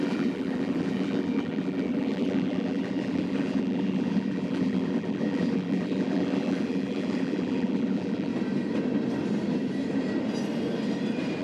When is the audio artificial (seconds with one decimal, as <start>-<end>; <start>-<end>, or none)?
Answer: 0.0-8.3

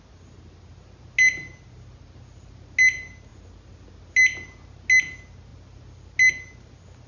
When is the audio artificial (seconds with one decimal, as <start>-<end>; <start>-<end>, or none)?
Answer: none

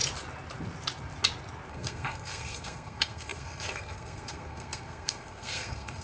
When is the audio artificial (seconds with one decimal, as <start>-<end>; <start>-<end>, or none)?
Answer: 1.7-6.0

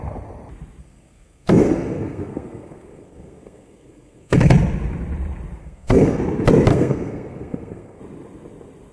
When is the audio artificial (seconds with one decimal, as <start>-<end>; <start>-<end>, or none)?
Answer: 0.8-4.5; 5.6-6.2; 6.7-8.0

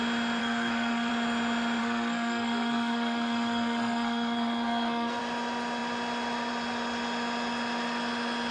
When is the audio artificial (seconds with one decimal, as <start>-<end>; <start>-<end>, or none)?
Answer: 0.4-1.1; 1.8-5.2

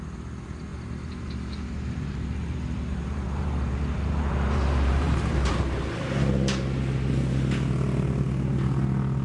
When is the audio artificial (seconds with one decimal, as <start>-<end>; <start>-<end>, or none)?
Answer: 0.7-5.5